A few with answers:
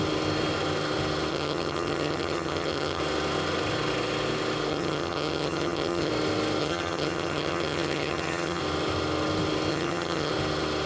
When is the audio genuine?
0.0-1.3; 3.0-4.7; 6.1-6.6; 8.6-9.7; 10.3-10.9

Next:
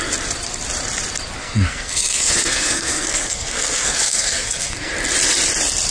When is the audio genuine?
0.0-1.4; 4.9-5.9

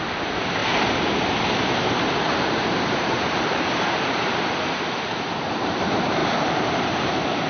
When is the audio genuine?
none

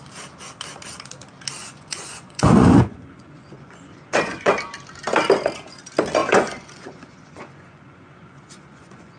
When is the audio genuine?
0.0-1.6; 4.5-6.2

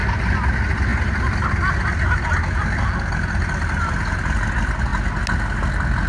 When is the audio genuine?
0.0-6.1

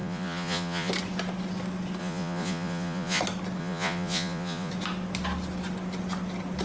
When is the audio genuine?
0.9-2.0; 3.2-3.6; 4.7-6.6